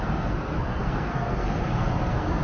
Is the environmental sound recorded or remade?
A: remade